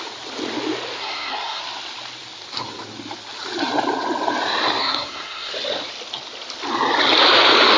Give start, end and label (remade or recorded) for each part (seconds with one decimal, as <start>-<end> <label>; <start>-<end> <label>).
0.0-1.0 recorded; 1.0-1.6 remade; 1.6-4.8 recorded; 4.8-5.5 remade; 5.5-7.8 recorded